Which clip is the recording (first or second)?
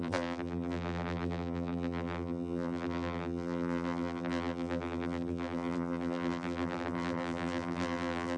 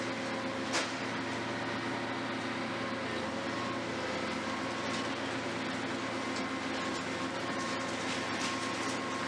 second